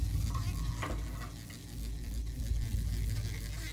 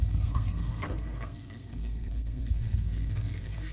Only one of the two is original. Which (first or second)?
first